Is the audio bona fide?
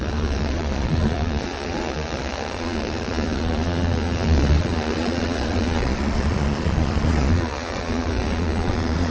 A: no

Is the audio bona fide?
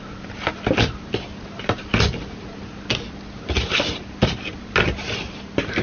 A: yes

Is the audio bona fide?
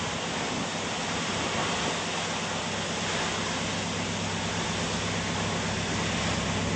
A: yes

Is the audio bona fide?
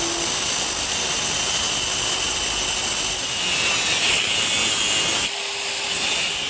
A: yes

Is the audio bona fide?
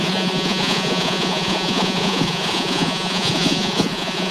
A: no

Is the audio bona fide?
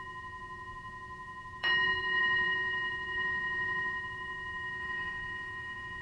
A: no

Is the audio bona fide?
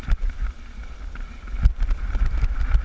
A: yes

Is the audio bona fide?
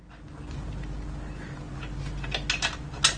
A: yes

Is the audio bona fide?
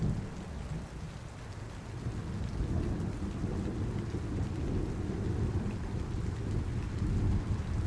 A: yes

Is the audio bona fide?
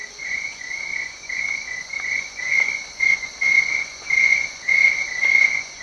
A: no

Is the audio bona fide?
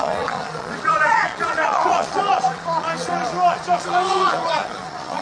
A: no